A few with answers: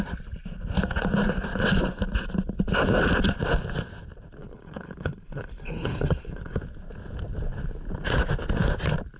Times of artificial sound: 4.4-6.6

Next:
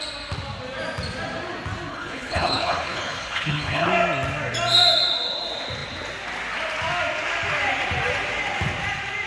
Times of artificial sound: 1.9-3.9